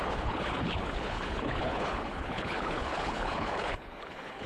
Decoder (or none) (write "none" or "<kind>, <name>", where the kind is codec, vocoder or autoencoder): codec, HILCodec